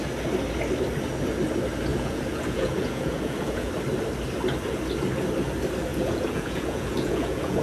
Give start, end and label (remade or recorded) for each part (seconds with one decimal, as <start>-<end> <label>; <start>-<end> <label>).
0.0-1.9 recorded; 1.9-3.7 remade; 3.7-5.9 recorded; 5.9-7.6 remade